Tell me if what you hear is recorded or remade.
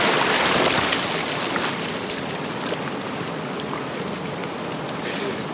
recorded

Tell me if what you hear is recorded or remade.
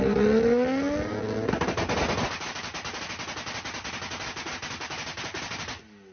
recorded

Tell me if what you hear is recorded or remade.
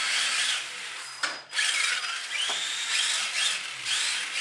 recorded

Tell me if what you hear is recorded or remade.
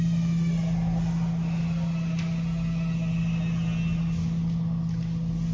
recorded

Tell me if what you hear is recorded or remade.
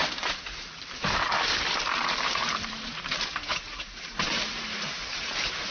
remade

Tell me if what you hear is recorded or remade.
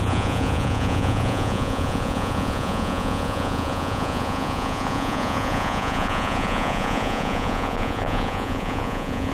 remade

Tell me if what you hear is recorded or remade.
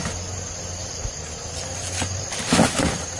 recorded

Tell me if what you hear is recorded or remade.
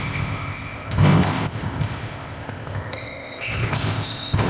remade